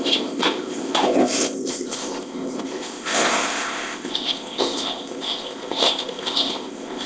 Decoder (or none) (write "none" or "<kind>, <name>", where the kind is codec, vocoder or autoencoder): codec, ZipCodec